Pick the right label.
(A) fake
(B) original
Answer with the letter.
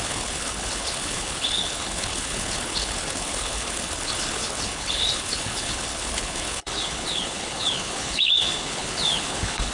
A